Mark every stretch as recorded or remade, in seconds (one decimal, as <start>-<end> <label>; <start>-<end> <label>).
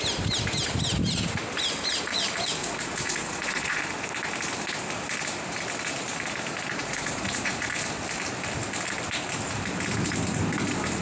0.0-2.6 recorded; 2.6-3.8 remade; 3.8-6.8 recorded; 6.8-7.7 remade; 7.7-11.0 recorded